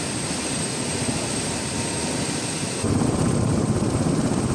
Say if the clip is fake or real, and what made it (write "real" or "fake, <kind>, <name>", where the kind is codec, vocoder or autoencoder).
real